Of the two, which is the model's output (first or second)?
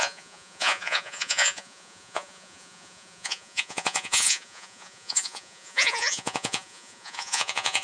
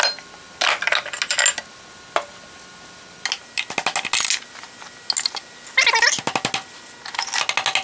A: first